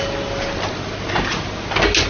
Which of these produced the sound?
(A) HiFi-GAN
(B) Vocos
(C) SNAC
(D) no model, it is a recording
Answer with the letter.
D